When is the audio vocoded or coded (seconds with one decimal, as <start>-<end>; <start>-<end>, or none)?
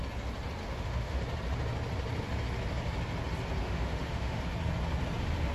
0.6-1.2; 3.6-4.4